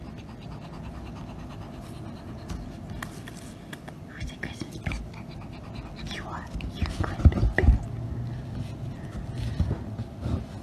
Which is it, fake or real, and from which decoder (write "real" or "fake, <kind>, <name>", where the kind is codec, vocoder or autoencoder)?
real